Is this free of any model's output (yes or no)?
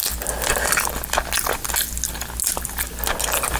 yes